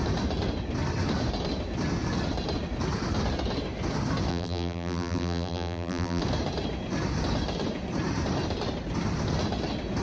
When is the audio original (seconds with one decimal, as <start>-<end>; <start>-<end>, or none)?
0.0-4.3; 6.2-10.0